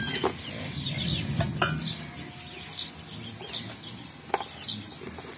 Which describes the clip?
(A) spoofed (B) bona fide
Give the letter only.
B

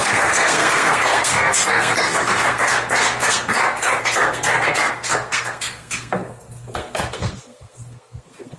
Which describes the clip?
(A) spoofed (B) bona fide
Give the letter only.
A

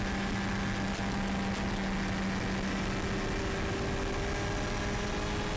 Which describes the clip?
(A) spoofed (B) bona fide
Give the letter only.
B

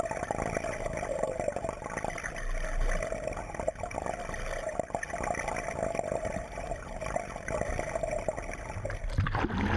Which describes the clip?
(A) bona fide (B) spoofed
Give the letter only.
A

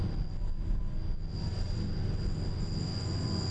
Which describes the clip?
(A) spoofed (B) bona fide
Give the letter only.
B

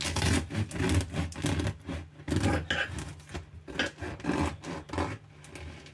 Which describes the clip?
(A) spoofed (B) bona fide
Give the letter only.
B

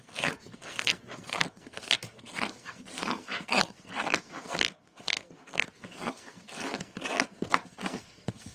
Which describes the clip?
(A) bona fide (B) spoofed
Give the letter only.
B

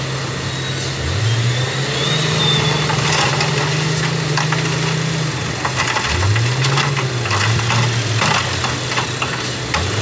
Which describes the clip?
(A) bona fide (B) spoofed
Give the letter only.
A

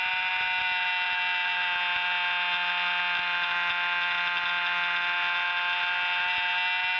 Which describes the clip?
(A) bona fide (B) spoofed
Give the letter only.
A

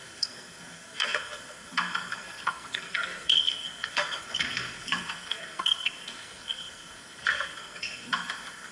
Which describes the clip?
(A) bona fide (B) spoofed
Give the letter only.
B